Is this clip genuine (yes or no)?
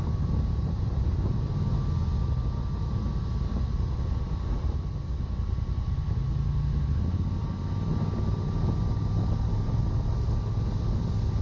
yes